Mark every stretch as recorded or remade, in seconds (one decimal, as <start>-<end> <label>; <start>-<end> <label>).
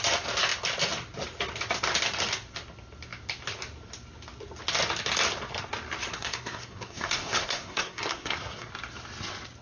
0.0-6.1 recorded; 6.1-8.7 remade; 8.7-9.6 recorded